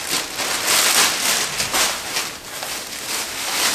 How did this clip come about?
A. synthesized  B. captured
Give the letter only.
B